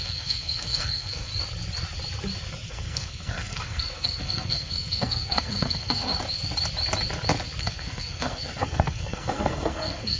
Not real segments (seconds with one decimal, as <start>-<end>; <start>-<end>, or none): 0.0-1.3; 2.7-6.1; 7.6-10.2